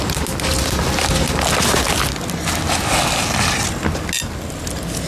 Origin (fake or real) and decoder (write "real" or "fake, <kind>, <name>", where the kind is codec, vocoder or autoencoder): real